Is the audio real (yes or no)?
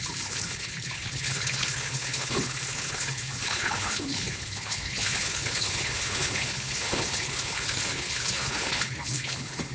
no